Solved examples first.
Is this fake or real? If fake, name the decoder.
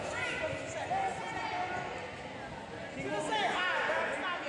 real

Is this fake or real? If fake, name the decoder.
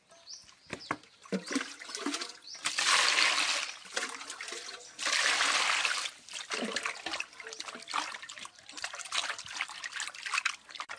real